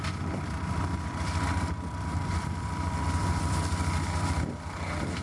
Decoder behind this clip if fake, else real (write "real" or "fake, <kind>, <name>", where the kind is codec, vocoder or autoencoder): fake, vocoder, BigVGAN v2